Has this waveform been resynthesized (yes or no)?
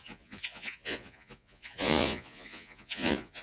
yes